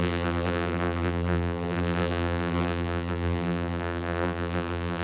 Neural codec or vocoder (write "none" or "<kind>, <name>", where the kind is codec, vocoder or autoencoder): vocoder, BigVGAN v2